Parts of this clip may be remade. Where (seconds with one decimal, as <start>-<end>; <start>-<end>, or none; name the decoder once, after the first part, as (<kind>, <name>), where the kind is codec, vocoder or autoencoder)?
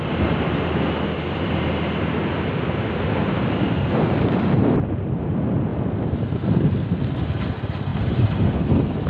7.9-8.6 (vocoder, BigVGAN v2)